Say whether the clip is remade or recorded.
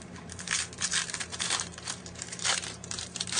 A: remade